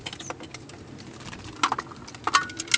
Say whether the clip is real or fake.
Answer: real